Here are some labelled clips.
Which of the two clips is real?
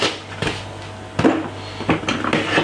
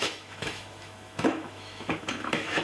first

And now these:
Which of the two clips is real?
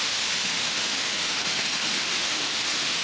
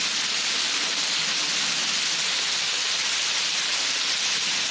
second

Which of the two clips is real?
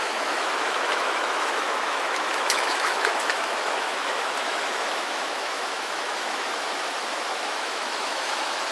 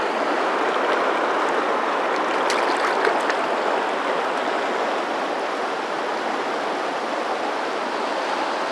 second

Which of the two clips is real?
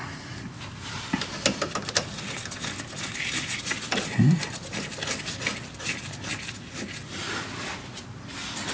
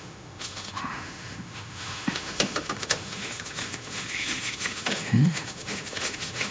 first